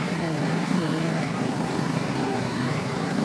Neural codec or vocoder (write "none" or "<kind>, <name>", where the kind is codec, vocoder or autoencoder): codec, SNAC